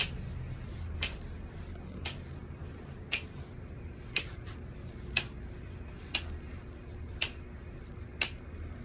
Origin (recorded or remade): recorded